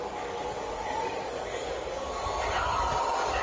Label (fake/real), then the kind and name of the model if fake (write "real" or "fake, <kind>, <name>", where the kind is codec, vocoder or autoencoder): fake, codec, DAC